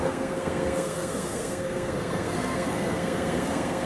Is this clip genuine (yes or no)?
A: no